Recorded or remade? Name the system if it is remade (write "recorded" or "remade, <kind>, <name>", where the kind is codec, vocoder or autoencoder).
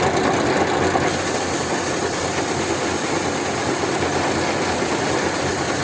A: recorded